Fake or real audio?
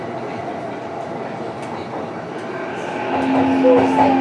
real